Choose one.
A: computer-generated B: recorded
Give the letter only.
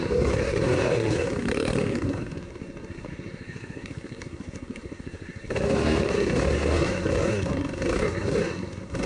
A